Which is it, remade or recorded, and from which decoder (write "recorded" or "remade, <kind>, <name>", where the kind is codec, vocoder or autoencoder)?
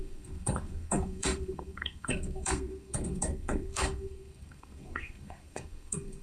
remade, codec, SNAC